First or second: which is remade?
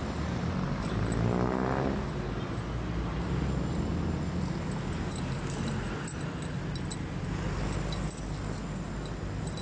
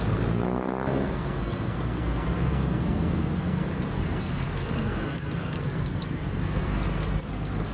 second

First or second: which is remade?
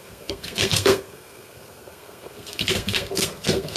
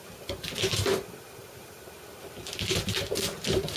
first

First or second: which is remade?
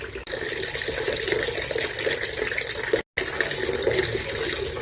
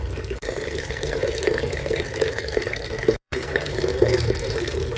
second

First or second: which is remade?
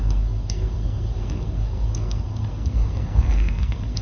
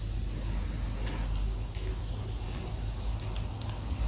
first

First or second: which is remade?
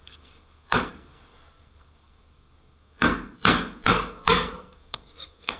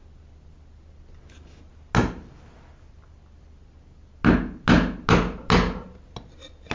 first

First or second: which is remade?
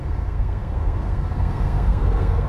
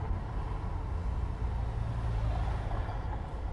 first